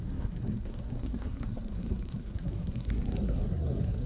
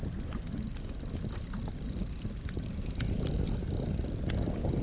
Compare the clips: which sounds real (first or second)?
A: second